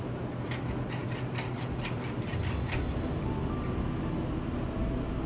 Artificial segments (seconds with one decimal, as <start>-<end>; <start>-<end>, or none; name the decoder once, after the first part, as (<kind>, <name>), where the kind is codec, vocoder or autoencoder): none